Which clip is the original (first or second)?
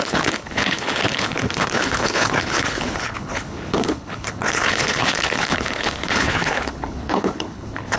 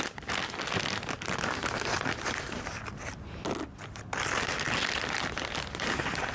second